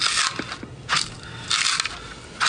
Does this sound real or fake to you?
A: real